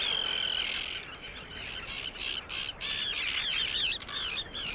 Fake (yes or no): no